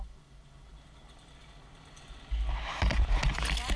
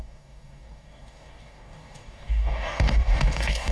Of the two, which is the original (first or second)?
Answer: first